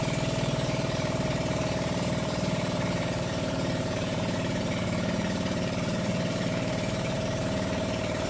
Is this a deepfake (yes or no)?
yes